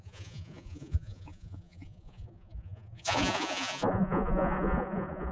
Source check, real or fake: fake